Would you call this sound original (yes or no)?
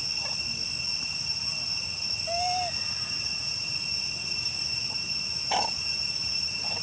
yes